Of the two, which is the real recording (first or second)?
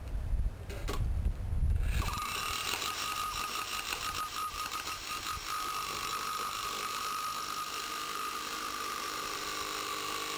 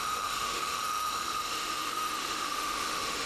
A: first